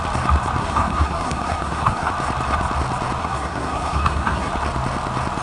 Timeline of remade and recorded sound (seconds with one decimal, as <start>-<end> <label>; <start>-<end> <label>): 0.0-0.6 recorded; 0.6-2.1 remade; 2.1-3.2 recorded; 3.2-4.5 remade; 4.5-5.4 recorded